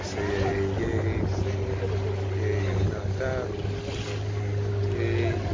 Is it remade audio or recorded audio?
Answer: recorded